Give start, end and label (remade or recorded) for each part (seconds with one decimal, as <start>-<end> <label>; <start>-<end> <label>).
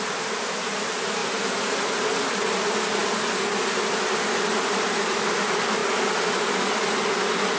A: 0.0-7.6 recorded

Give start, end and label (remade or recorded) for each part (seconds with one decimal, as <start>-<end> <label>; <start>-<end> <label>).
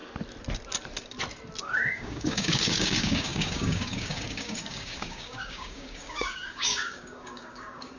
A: 0.0-1.6 recorded; 1.6-8.0 remade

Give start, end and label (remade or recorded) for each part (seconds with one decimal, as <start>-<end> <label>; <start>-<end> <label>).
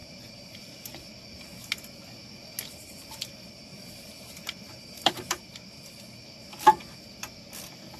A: 0.0-1.1 remade; 1.1-3.7 recorded; 3.7-5.4 remade; 5.4-8.0 recorded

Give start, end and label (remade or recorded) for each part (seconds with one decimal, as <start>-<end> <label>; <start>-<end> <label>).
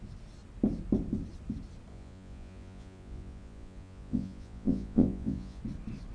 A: 0.0-1.9 recorded; 1.9-5.6 remade; 5.6-6.1 recorded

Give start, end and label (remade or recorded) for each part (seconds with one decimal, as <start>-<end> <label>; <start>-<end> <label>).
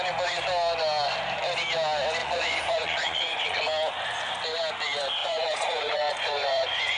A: 0.0-2.2 recorded; 2.2-3.6 remade; 3.6-5.2 recorded; 5.2-7.0 remade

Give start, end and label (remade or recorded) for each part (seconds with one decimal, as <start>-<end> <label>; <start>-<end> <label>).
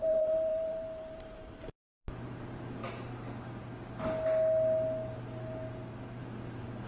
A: 0.0-2.8 remade; 2.8-6.2 recorded; 6.2-6.9 remade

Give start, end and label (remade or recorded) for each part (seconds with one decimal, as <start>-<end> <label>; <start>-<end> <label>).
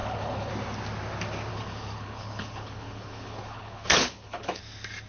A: 0.0-0.5 remade; 0.5-1.5 recorded; 1.5-4.6 remade; 4.6-5.1 recorded